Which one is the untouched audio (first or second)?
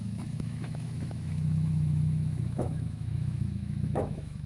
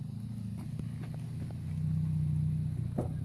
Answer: second